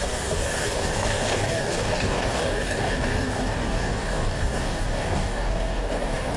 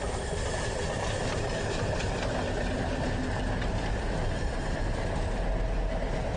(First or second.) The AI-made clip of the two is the first